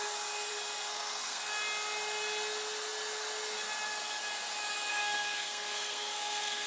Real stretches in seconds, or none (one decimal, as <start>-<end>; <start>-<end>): 0.0-0.9; 1.5-4.9